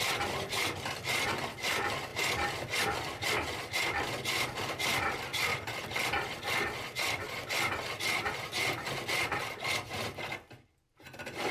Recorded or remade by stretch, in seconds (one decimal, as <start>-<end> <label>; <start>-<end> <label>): 0.0-11.5 recorded